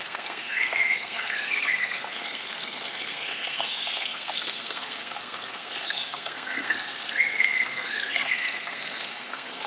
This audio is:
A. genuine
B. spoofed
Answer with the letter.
B